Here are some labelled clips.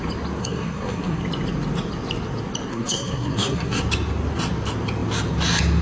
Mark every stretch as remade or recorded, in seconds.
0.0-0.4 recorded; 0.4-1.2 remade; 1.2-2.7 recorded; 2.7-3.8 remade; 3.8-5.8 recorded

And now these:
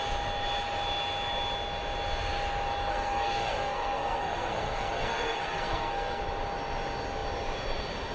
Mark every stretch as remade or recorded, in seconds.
0.0-2.9 recorded; 2.9-6.2 remade; 6.2-8.1 recorded

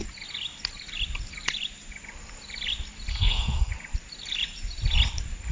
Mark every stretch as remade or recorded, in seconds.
0.0-3.1 recorded; 3.1-3.7 remade; 3.7-5.5 recorded